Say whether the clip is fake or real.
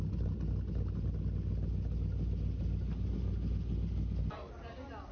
real